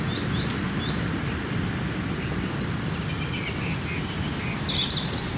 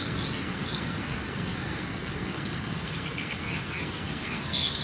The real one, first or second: first